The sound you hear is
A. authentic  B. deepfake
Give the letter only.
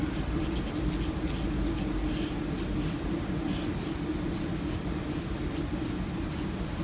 A